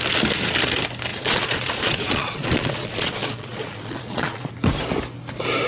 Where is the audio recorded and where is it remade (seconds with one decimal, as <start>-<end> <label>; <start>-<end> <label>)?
0.0-1.1 recorded; 1.1-4.5 remade; 4.5-5.7 recorded